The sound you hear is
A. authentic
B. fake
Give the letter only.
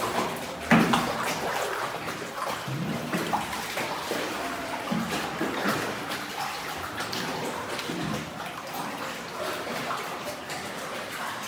A